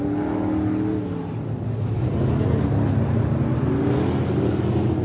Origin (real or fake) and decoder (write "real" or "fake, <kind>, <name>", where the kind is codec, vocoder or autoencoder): real